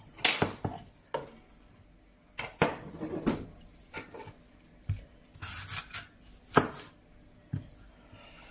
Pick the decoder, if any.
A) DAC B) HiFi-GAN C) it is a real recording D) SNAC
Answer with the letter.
C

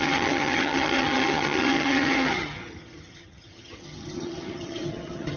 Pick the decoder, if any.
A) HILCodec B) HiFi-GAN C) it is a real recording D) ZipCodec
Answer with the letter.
B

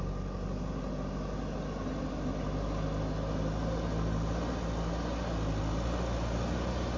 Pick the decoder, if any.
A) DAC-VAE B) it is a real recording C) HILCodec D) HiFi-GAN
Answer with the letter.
B